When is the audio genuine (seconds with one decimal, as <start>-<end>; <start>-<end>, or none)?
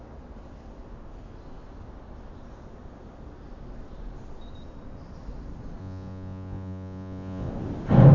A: 0.0-5.8; 7.5-8.1